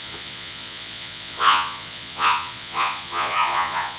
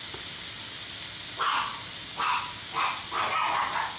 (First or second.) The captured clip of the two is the second